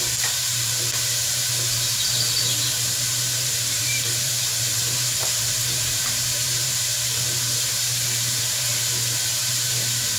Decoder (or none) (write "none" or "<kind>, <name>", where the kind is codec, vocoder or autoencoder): vocoder, BigVGAN v2